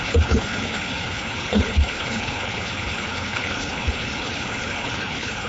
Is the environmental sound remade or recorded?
remade